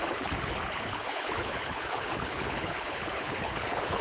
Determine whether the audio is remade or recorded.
remade